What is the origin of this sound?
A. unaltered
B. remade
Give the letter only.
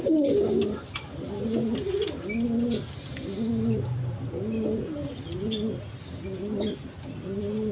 A